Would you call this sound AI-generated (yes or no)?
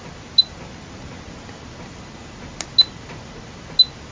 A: no